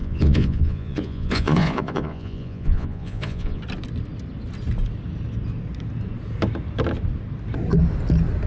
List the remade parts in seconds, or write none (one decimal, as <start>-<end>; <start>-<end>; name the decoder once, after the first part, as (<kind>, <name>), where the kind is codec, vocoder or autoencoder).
0.0-3.6 (vocoder, Vocos)